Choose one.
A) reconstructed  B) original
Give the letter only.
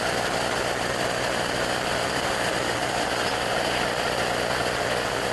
B